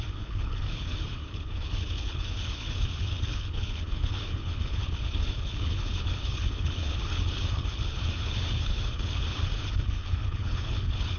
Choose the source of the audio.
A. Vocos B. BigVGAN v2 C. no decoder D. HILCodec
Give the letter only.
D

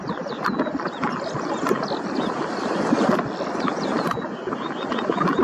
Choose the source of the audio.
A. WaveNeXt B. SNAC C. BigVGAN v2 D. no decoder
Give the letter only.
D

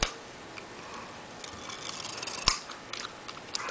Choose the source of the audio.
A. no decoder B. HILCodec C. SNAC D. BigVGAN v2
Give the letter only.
A